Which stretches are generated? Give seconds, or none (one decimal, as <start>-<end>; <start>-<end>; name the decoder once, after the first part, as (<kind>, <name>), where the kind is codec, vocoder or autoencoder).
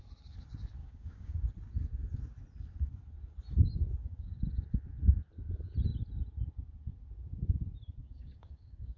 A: 0.8-1.5 (codec, DAC); 4.0-4.5; 8.0-9.0